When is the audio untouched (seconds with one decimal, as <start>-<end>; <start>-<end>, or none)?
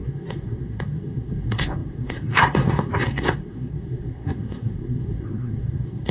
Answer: none